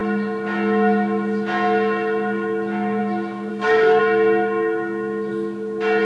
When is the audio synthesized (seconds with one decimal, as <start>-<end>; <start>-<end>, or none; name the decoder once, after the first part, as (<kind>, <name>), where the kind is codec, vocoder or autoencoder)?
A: 3.5-4.0 (codec, SNAC)